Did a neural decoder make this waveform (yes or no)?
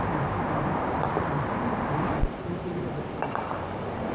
yes